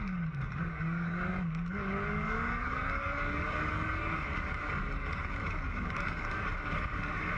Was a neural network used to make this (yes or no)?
yes